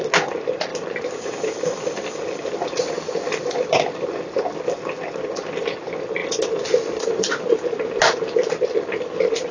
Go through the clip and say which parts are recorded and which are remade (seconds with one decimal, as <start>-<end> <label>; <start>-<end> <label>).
0.0-0.7 recorded; 0.7-4.2 remade; 4.2-9.5 recorded